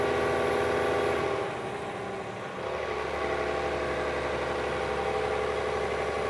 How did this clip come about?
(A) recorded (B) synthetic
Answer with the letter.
A